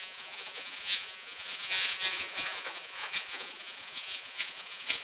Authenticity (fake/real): fake